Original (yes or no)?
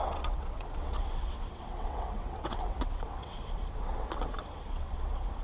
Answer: no